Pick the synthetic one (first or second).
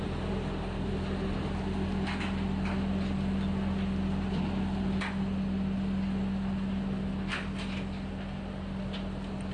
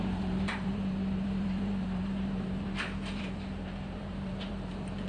second